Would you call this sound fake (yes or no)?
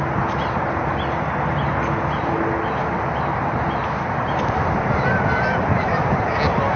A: no